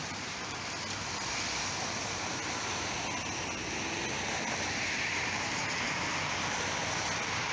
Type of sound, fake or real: real